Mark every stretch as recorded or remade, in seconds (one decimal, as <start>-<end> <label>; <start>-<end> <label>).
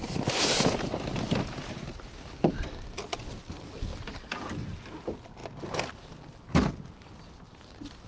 0.0-8.1 recorded